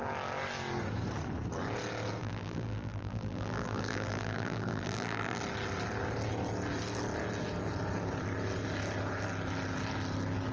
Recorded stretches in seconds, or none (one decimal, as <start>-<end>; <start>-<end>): 0.0-2.2; 5.4-10.5